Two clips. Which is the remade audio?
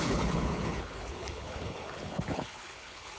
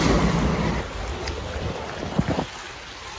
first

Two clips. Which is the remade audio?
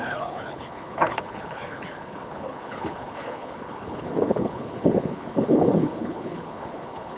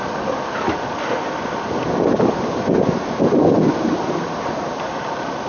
first